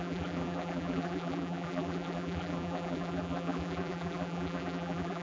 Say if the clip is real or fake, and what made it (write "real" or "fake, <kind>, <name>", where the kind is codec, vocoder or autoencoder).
fake, vocoder, BigVGAN v2